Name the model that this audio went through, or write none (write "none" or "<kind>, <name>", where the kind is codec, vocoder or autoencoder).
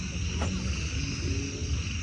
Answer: none